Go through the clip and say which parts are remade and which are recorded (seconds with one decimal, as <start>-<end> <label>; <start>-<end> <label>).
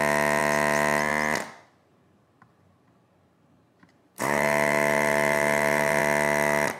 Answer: 0.0-1.9 recorded; 1.9-6.0 remade; 6.0-6.8 recorded